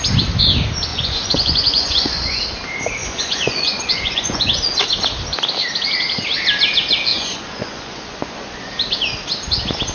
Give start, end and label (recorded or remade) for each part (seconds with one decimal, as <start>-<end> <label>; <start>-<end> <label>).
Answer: 0.0-0.9 recorded; 0.9-2.4 remade; 2.4-3.0 recorded; 3.0-4.5 remade; 4.5-7.1 recorded; 7.1-8.7 remade; 8.7-9.9 recorded